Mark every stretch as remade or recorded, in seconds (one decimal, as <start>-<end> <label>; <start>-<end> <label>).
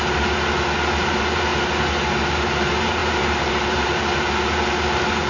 0.0-1.0 recorded; 1.0-1.5 remade; 1.5-2.1 recorded; 2.1-5.3 remade